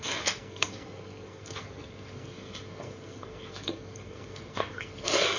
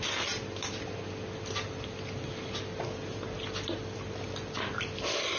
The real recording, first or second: second